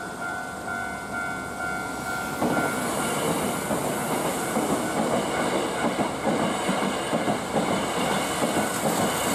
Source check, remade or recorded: recorded